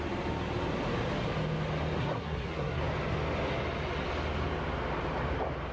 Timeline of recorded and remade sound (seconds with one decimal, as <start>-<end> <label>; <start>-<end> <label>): 0.0-2.0 recorded; 2.0-2.8 remade; 2.8-5.7 recorded